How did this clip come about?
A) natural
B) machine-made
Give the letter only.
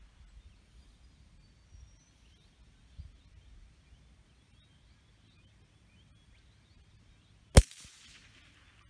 A